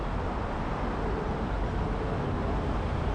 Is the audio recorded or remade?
recorded